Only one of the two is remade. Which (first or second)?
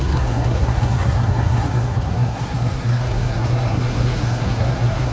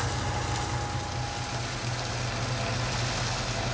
first